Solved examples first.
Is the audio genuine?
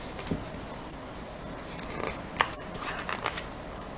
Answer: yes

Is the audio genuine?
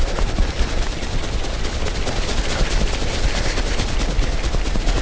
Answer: yes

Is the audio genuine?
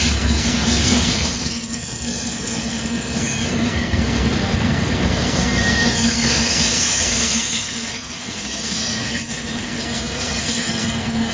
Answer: no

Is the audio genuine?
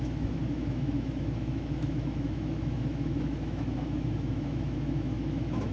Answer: no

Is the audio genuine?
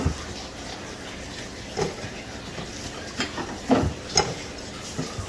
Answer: yes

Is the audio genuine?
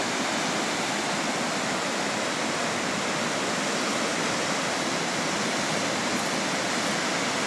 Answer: yes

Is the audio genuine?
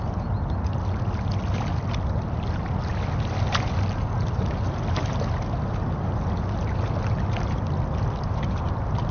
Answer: yes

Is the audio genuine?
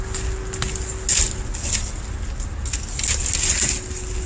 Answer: yes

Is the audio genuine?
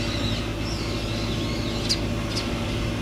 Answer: yes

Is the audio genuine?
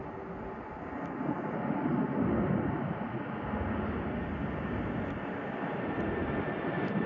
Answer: yes